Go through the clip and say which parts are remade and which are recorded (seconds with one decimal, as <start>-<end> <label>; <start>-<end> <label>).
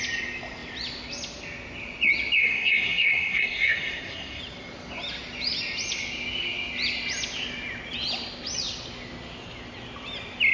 0.0-2.4 recorded; 2.4-4.4 remade; 4.4-10.5 recorded